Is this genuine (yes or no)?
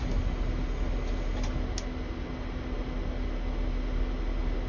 yes